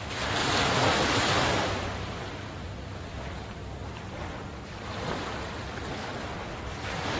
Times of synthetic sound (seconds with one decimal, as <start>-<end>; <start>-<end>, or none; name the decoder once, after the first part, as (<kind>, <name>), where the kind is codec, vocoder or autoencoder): 0.4-2.7 (vocoder, BigVGAN v2)